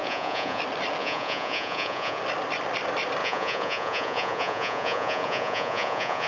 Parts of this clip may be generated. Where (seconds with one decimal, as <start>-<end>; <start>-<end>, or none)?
0.0-0.6; 1.0-2.2; 3.2-6.3